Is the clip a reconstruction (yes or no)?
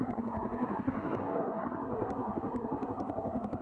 yes